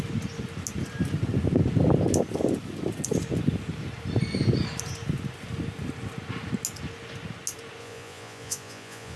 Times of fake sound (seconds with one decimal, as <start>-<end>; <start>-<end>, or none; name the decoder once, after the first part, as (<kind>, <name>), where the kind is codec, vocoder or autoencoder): 7.8-9.2 (vocoder, Vocos)